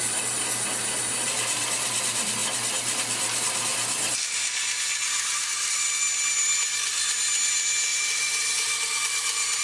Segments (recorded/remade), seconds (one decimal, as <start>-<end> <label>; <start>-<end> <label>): 0.0-9.6 recorded